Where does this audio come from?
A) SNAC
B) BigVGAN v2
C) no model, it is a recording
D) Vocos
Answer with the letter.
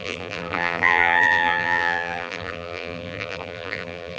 B